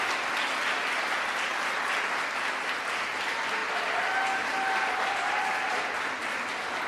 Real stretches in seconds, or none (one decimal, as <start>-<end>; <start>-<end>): 0.0-6.9